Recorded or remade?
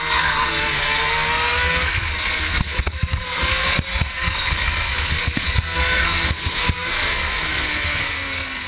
remade